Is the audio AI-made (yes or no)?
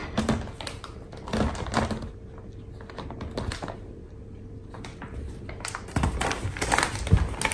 no